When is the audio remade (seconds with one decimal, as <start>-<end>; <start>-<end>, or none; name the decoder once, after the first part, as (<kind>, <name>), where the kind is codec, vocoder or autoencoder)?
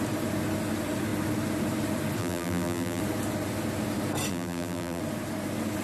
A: 2.2-3.0 (vocoder, BigVGAN v2); 4.3-5.0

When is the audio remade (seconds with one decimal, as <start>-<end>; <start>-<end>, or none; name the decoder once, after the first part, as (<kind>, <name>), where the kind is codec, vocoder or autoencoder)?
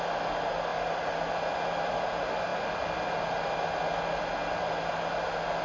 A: 0.7-2.1 (vocoder, BigVGAN v2)